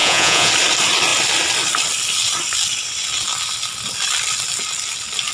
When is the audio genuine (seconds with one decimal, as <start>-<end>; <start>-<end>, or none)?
0.5-5.3